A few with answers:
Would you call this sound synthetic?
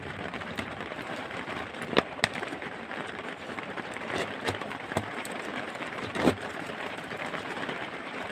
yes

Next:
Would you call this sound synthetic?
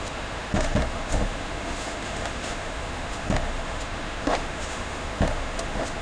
yes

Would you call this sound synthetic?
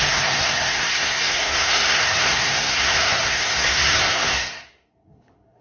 yes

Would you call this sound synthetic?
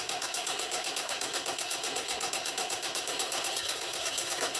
yes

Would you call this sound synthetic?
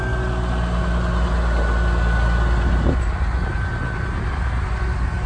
no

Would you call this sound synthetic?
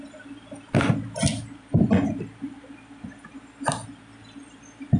no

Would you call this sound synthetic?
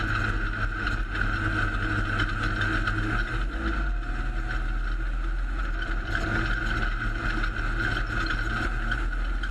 no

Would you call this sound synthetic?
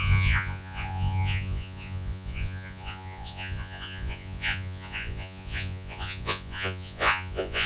yes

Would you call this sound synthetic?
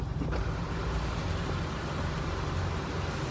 yes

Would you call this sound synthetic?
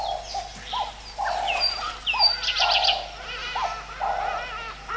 no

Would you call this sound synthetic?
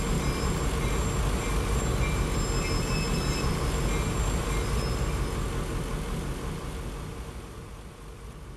no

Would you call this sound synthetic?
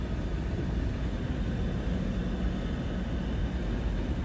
no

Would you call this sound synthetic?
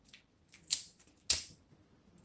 no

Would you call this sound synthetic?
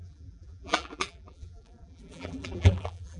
yes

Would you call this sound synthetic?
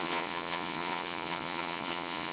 yes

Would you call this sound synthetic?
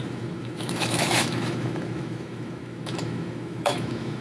yes